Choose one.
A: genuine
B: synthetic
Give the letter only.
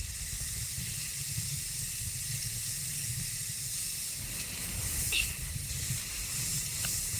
A